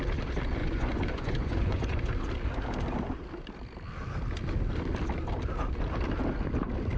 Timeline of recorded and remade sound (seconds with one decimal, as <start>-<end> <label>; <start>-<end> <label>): 0.0-0.6 recorded; 0.6-2.1 remade; 2.1-7.0 recorded